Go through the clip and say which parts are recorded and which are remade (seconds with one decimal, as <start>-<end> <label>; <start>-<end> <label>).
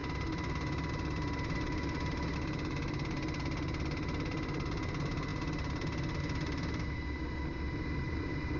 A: 0.0-8.6 recorded